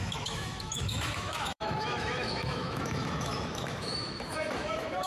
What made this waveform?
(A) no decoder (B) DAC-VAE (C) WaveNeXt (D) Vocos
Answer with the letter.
B